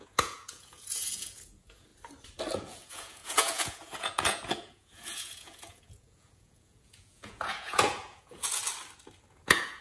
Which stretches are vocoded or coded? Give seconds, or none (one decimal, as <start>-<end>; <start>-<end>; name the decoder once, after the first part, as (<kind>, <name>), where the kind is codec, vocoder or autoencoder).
0.0-1.9 (vocoder, Vocos); 2.5-8.6; 9.3-9.8

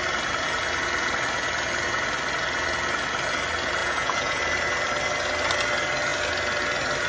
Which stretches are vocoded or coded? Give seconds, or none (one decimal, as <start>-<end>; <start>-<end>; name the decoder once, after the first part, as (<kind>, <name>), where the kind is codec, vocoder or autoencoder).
3.8-4.4 (vocoder, Vocos)

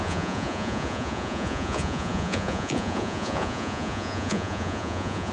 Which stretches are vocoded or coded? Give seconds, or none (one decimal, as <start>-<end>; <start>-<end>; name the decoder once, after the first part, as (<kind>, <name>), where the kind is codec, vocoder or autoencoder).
0.0-5.3 (vocoder, Vocos)

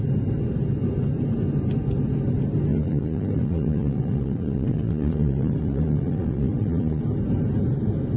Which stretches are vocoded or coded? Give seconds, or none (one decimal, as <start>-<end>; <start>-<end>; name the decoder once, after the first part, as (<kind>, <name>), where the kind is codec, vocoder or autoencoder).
2.7-7.0 (vocoder, Vocos)

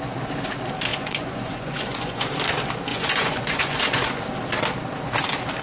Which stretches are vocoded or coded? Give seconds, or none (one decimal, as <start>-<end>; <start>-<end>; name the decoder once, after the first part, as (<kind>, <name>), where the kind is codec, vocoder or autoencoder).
0.9-2.3 (vocoder, Vocos); 2.9-4.2